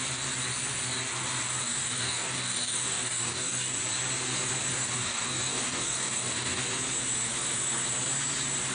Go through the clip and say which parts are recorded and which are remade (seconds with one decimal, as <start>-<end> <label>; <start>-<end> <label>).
0.0-1.6 recorded; 1.6-3.8 remade; 3.8-4.7 recorded; 4.7-6.6 remade; 6.6-8.7 recorded